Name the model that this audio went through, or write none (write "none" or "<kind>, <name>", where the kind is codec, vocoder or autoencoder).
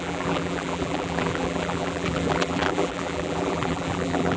vocoder, BigVGAN v2